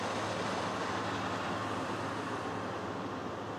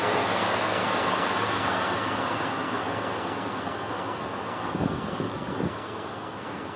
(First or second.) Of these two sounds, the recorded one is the first